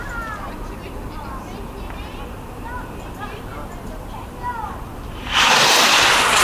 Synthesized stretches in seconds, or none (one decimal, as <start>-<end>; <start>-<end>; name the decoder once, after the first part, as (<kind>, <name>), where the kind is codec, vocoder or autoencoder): none